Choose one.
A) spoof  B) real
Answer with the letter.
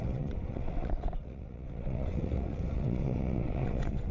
A